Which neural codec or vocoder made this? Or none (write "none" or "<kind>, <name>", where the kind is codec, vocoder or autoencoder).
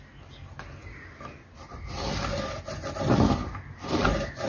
none